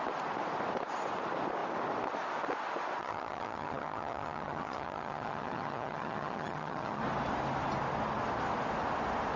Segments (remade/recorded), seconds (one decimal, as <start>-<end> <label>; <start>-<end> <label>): 0.0-3.0 recorded; 3.0-7.0 remade; 7.0-9.4 recorded